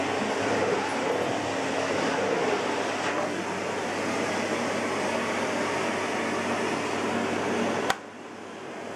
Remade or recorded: recorded